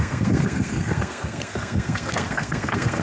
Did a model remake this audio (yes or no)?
yes